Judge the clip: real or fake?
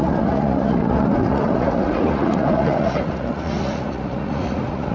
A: fake